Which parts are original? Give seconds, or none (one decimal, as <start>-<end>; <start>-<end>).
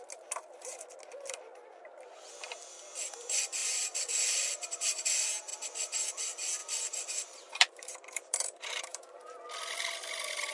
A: 0.0-3.6; 5.1-6.6; 9.4-10.5